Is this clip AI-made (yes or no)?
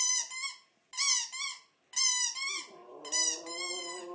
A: no